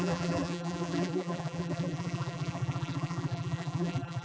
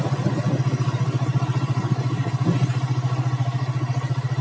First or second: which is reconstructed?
first